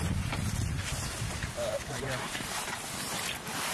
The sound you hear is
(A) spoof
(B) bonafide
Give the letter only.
B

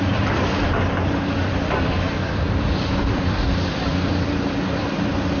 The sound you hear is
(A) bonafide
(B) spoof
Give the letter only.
B